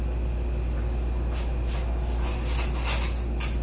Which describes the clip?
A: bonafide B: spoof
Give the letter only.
A